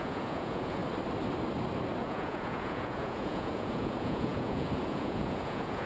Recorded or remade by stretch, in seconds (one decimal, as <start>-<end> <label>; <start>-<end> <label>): 0.0-0.8 remade; 0.8-2.0 recorded; 2.0-5.9 remade